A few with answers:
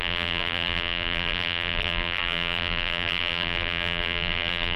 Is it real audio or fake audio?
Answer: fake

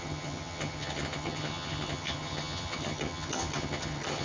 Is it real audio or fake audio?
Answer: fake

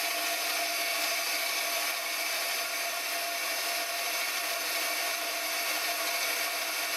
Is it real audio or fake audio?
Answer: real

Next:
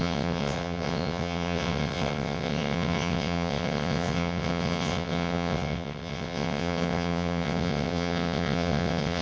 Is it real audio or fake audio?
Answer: fake